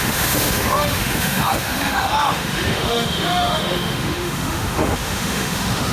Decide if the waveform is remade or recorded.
remade